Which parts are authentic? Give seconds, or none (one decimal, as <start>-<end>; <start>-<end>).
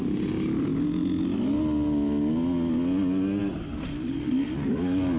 0.0-5.2